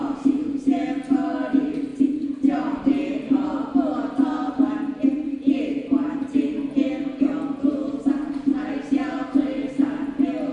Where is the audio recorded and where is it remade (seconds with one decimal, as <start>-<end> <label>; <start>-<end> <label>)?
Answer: 0.0-10.5 recorded